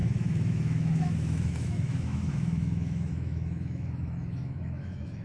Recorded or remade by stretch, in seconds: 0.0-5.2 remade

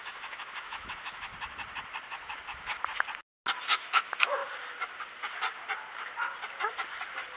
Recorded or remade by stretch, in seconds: 0.0-1.3 remade; 1.3-3.6 recorded; 3.6-4.4 remade; 4.4-7.4 recorded